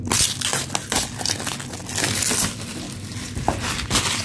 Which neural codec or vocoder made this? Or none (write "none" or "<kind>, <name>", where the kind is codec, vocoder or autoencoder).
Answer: none